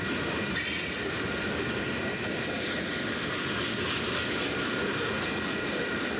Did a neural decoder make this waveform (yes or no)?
yes